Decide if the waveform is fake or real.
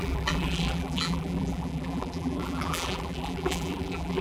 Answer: fake